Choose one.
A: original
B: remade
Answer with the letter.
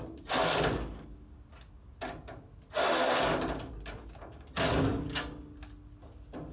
A